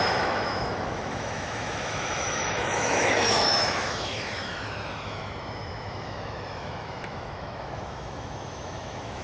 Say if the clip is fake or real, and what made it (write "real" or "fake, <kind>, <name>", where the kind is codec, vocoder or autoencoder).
fake, autoencoder, DAC-VAE